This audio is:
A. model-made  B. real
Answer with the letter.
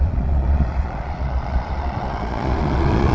A